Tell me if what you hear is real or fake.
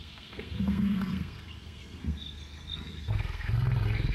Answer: fake